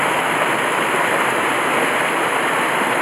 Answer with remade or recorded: recorded